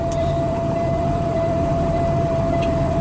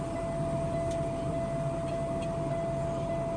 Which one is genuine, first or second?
second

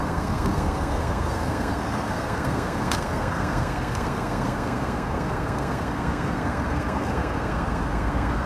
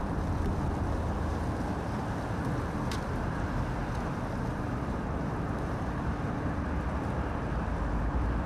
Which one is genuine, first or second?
second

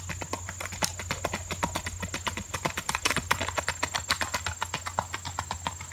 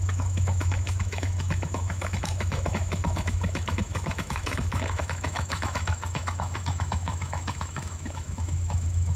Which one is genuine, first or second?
first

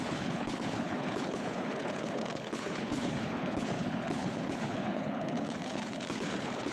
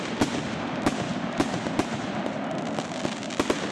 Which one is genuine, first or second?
second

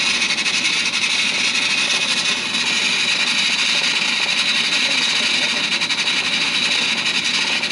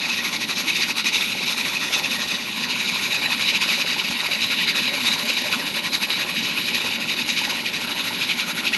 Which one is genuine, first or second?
first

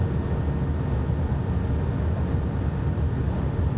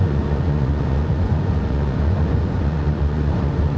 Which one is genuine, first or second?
first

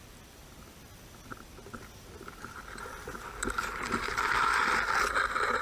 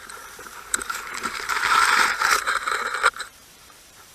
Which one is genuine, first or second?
first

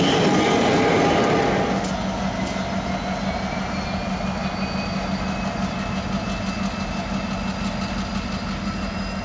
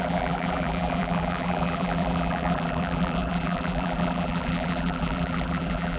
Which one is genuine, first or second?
first